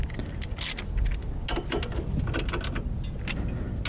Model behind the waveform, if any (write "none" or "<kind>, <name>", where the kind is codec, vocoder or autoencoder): none